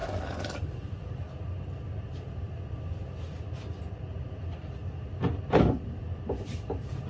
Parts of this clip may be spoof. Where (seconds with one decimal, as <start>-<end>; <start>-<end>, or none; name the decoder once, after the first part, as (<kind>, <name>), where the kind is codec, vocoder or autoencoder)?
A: 0.0-1.1 (vocoder, BigVGAN v2); 5.2-7.1